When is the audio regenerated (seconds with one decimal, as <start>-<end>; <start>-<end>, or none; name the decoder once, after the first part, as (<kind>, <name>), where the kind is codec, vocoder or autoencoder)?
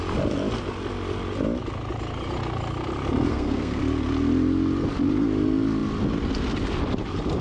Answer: 3.3-3.8 (codec, SNAC)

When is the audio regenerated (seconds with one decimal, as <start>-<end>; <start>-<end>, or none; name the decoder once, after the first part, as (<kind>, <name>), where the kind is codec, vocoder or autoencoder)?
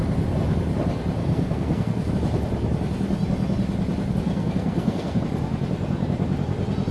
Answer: 1.2-2.1 (codec, SNAC); 4.2-5.2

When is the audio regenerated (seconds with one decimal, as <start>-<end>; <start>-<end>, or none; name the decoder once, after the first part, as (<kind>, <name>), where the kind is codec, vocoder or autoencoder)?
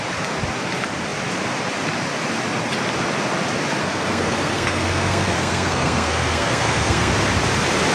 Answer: 3.8-7.1 (codec, SNAC)